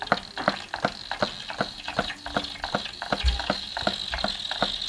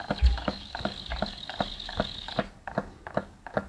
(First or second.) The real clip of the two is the first